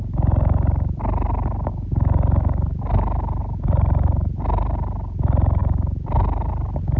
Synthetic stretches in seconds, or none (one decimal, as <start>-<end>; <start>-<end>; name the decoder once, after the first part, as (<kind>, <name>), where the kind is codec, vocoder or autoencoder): none